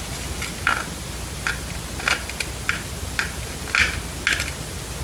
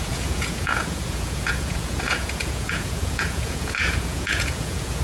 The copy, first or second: second